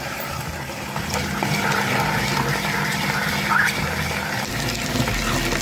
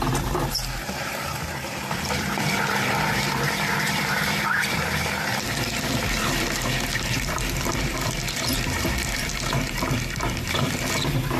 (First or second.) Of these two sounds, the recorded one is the first